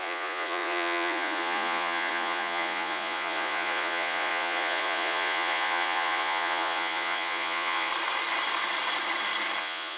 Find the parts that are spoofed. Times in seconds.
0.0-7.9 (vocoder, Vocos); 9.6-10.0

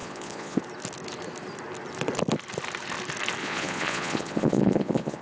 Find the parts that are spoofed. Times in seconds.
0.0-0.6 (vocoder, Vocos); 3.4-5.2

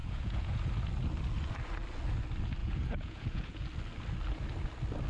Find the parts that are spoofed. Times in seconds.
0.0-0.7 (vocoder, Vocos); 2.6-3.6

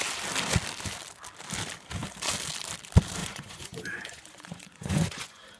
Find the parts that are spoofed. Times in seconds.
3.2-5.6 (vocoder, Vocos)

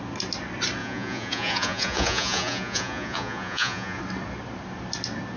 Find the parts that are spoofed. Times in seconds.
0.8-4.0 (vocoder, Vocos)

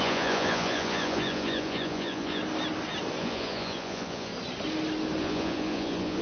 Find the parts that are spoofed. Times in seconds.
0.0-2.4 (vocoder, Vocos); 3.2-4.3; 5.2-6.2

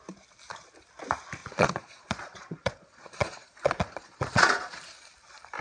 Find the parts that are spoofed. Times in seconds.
1.4-4.8 (vocoder, Vocos)